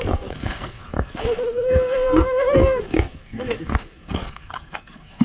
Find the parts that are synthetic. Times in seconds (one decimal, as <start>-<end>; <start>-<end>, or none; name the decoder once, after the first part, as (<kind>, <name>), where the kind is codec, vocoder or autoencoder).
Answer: 0.0-5.2 (codec, SNAC)